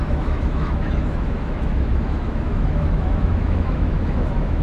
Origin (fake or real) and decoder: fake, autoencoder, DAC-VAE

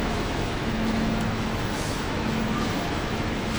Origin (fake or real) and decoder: fake, autoencoder, DAC-VAE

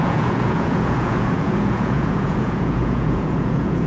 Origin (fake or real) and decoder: fake, vocoder, Vocos